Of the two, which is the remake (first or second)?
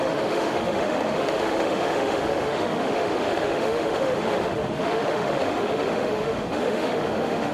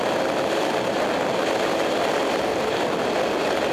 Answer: first